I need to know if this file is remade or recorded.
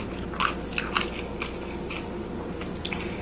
recorded